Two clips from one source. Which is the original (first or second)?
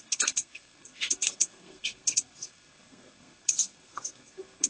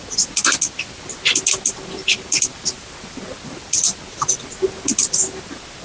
second